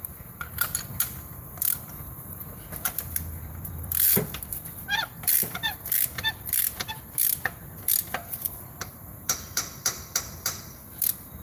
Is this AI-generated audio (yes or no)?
yes